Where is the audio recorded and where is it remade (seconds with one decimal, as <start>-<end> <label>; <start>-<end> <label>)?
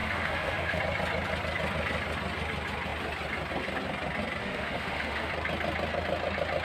0.0-0.8 remade; 0.8-4.4 recorded; 4.4-5.3 remade; 5.3-6.6 recorded